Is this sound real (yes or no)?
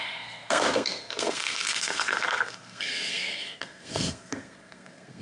no